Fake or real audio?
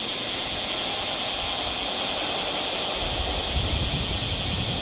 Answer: real